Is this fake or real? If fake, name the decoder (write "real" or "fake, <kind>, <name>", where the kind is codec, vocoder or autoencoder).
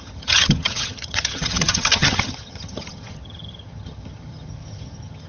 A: fake, vocoder, HiFi-GAN